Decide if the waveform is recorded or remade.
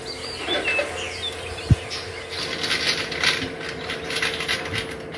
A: recorded